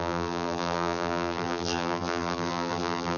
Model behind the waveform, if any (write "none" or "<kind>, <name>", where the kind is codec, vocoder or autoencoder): vocoder, BigVGAN v2